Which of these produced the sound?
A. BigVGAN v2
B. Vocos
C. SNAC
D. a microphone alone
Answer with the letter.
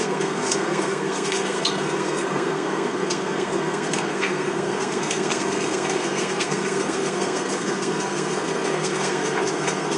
C